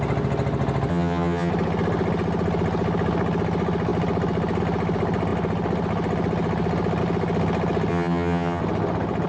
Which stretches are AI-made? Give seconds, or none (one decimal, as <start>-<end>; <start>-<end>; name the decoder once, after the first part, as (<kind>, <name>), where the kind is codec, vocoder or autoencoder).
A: 0.9-1.5 (vocoder, HiFi-GAN); 7.9-8.6